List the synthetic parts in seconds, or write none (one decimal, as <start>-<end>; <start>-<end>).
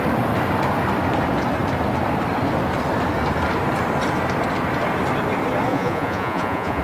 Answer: 5.7-6.8